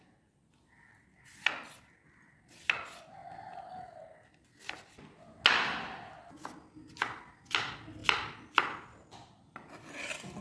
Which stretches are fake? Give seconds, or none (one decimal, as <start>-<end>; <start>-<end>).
none